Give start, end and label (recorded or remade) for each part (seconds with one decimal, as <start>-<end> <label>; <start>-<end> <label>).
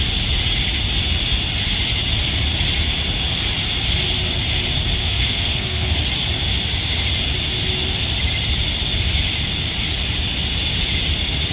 0.0-5.0 recorded; 5.0-5.9 remade; 5.9-11.5 recorded